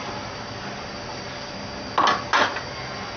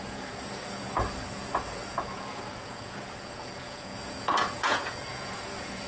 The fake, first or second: second